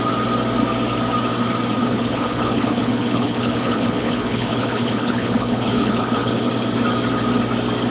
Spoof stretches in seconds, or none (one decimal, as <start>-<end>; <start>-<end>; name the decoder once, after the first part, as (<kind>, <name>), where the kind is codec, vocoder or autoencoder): 1.8-6.5 (codec, HILCodec)

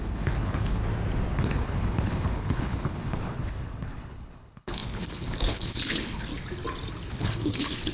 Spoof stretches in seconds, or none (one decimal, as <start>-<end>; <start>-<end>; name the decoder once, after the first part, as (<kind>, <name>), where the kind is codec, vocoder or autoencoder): 0.0-0.8 (codec, HILCodec); 1.4-6.3; 7.1-7.9

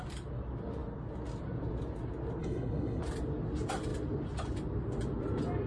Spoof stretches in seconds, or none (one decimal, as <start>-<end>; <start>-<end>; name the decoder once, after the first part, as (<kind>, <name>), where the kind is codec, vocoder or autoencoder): 2.4-3.0 (codec, HILCodec)

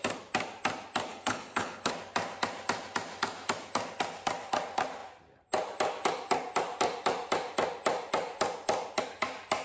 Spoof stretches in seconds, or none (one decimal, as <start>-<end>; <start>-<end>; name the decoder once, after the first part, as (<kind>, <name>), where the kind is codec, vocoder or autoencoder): 1.1-1.9 (codec, HILCodec)